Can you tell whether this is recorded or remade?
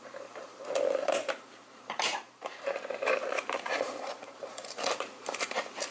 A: remade